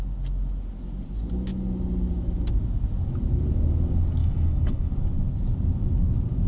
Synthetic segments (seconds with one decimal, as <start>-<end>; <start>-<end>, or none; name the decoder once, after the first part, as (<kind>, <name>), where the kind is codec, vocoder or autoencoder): 4.2-4.9 (autoencoder, DAC-VAE)